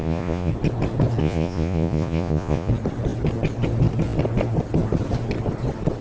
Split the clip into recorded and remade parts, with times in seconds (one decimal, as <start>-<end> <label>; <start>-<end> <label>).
0.0-0.5 remade; 0.5-1.2 recorded; 1.2-2.7 remade; 2.7-6.0 recorded